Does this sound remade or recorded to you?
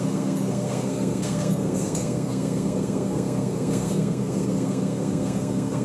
remade